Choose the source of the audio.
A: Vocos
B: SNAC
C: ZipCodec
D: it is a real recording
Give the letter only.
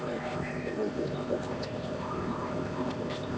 C